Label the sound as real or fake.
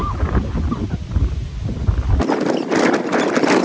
real